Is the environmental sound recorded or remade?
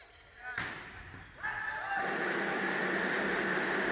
recorded